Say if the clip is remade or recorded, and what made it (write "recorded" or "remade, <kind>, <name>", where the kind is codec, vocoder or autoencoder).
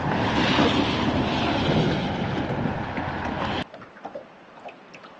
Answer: recorded